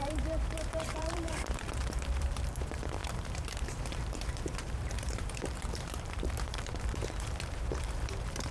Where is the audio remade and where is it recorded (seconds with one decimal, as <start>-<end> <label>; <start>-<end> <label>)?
0.0-8.5 remade